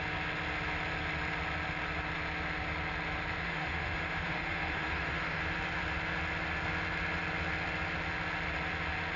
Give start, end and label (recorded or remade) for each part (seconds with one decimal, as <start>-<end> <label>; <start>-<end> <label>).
0.0-3.4 recorded; 3.4-5.4 remade; 5.4-9.2 recorded